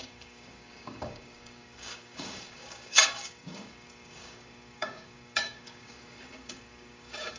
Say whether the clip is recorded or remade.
remade